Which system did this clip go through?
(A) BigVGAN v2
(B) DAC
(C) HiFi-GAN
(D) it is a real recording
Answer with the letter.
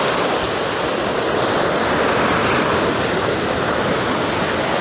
D